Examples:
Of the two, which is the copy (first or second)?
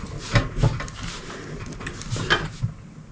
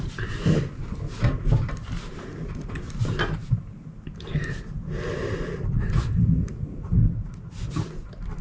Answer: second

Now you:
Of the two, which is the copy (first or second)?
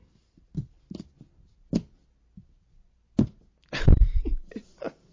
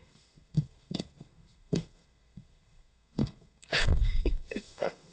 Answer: second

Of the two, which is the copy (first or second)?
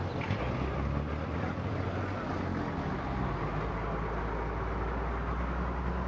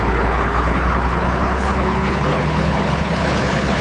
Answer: second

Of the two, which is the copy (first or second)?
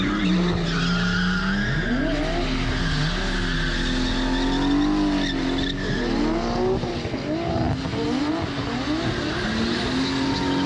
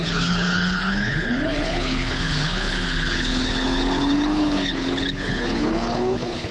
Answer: second